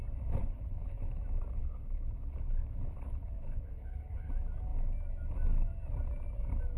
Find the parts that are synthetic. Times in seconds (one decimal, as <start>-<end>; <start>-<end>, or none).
0.4-1.2; 1.6-4.3